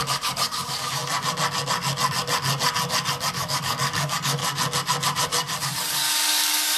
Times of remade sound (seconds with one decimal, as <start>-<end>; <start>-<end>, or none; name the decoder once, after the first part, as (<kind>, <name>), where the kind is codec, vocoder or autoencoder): 0.0-1.0 (codec, DAC); 3.3-4.4; 5.6-6.8